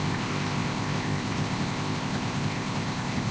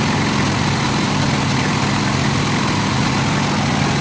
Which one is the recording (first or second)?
second